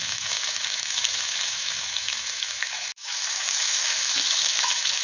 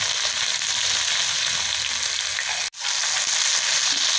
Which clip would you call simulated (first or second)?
first